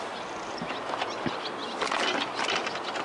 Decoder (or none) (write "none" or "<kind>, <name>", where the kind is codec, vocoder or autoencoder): none